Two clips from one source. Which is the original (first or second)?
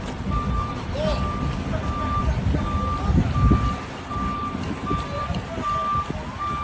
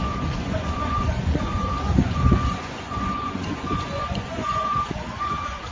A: first